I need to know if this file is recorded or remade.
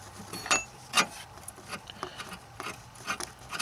recorded